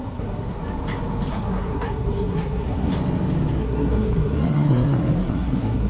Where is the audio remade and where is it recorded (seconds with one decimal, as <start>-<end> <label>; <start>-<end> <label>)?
0.0-0.6 remade; 0.6-1.3 recorded; 1.3-2.9 remade; 2.9-3.6 recorded; 3.6-5.9 remade